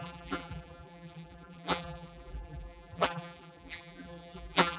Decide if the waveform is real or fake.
fake